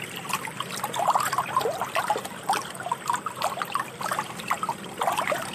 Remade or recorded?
recorded